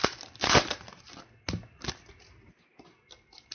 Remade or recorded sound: recorded